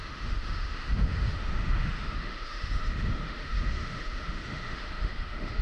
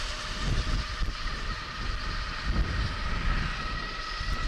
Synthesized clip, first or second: first